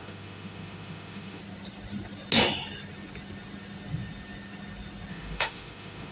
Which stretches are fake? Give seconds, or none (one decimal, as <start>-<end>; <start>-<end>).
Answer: 0.0-1.4; 5.1-6.1